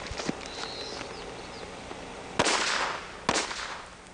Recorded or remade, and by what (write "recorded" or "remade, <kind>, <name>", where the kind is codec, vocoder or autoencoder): recorded